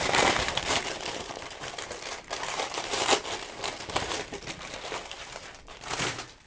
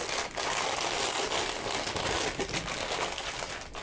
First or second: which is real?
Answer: second